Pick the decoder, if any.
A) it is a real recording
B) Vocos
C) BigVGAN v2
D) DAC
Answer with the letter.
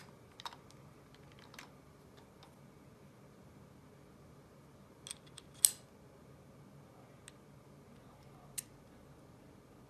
A